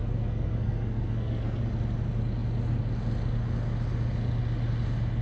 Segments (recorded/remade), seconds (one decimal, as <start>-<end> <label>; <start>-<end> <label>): 0.0-1.6 remade; 1.6-5.2 recorded